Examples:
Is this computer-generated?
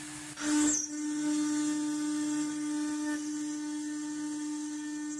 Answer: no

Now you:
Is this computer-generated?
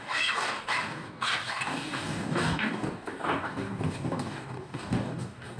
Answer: yes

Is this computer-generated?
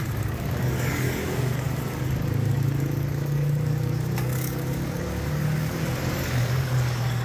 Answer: yes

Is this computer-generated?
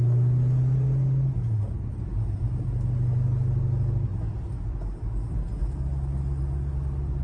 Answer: no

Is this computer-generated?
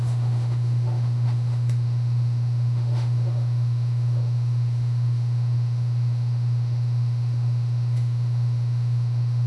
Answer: yes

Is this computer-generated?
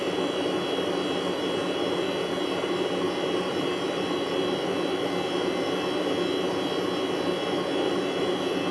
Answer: no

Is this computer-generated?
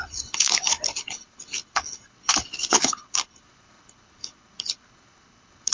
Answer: yes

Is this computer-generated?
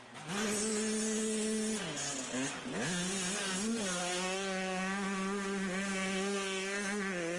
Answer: no